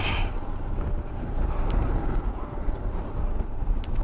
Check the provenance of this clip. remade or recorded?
recorded